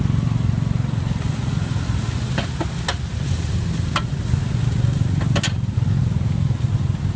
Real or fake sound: real